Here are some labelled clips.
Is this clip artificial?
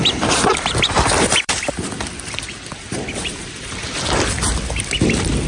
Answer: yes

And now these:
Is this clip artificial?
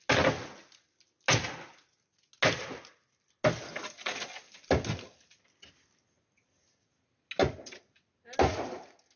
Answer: no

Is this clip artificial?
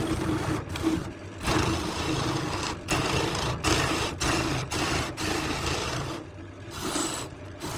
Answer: no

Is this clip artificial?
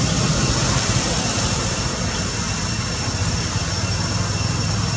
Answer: no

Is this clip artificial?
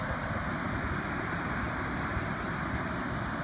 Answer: no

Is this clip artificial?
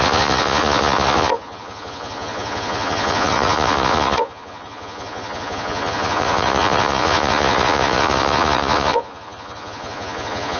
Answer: yes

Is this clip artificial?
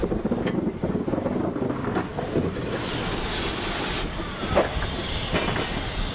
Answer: no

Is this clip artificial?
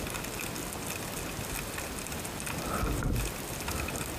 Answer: no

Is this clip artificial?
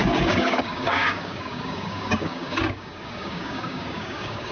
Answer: yes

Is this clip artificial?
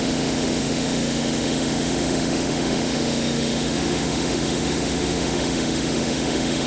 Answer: yes